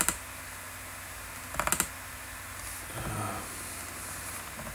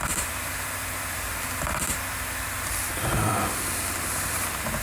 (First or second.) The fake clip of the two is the second